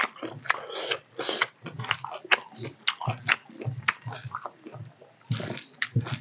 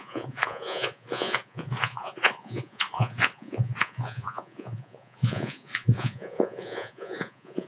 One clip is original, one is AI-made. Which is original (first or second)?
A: first